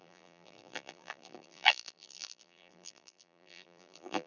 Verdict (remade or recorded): remade